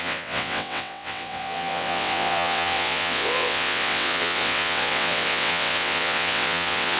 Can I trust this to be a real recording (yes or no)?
no